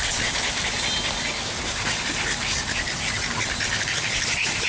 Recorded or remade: recorded